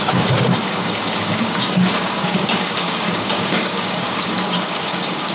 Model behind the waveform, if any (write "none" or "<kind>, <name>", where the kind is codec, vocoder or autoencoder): codec, DAC